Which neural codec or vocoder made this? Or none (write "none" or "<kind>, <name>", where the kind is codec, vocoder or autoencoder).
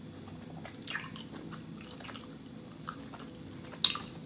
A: none